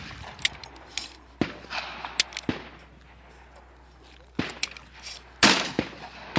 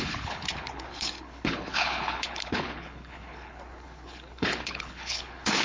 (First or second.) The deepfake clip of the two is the second